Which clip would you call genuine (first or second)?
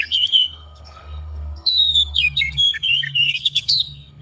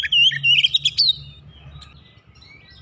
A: second